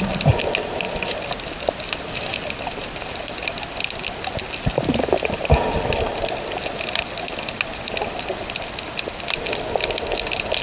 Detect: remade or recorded recorded